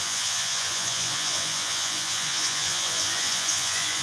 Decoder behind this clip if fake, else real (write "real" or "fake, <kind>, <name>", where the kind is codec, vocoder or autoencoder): fake, vocoder, Vocos